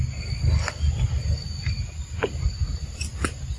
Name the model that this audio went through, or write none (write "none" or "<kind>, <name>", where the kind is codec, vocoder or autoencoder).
none